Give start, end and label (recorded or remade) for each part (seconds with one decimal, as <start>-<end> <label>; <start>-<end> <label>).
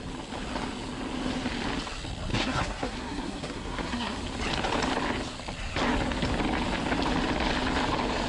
0.0-2.3 recorded; 2.3-4.2 remade; 4.2-8.3 recorded